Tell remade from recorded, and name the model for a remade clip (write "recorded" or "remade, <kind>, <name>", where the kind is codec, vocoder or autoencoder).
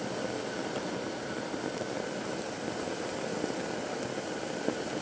recorded